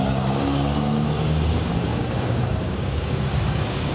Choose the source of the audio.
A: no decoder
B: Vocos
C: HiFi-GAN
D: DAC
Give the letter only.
D